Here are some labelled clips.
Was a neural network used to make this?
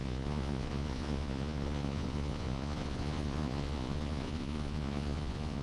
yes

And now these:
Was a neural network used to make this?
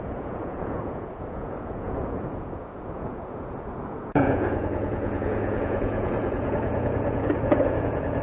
yes